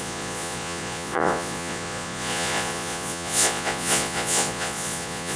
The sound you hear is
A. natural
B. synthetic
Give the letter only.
B